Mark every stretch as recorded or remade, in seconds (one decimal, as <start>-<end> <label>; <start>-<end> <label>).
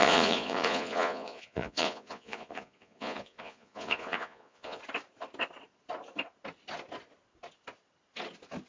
0.0-4.8 remade; 4.8-8.7 recorded